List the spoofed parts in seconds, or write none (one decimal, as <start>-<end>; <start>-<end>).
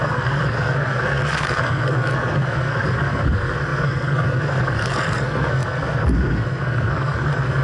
0.0-7.6